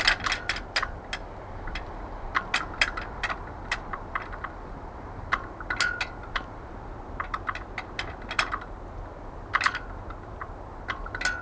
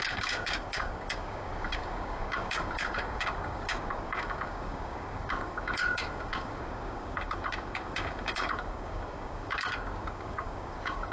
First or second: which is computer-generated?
second